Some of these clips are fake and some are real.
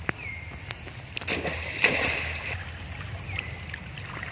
real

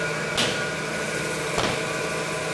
real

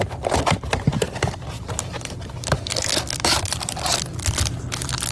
real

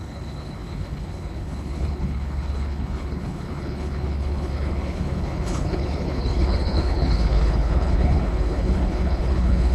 fake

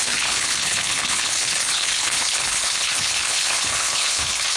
fake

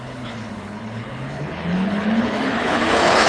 fake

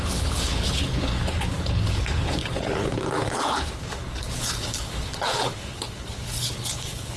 fake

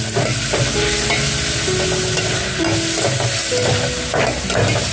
real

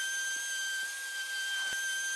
real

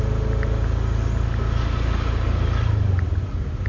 real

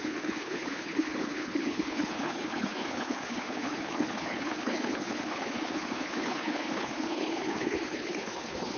fake